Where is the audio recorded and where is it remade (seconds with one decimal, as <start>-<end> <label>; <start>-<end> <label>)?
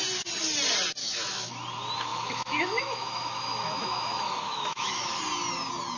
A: 0.0-1.0 recorded; 1.0-1.5 remade; 1.5-2.1 recorded; 2.1-5.2 remade; 5.2-6.0 recorded